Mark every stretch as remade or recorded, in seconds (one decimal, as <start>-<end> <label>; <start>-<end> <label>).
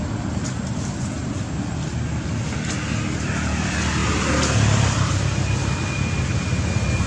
0.0-4.0 recorded; 4.0-5.1 remade; 5.1-7.1 recorded